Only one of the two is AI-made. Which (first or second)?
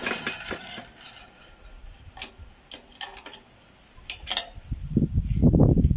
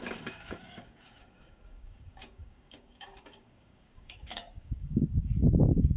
second